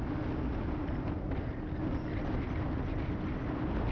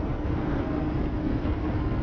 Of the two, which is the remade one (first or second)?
second